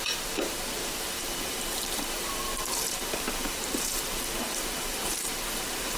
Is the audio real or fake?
fake